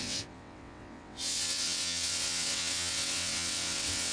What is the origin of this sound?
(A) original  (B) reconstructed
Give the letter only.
B